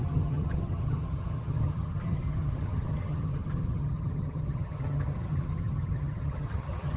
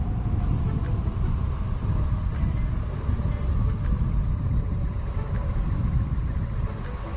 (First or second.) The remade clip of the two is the first